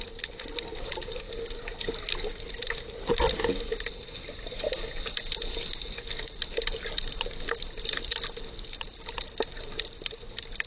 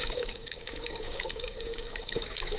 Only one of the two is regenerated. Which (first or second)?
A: second